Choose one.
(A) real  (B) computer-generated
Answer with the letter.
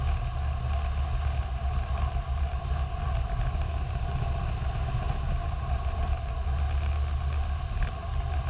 A